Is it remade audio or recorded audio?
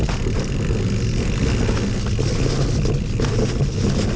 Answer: recorded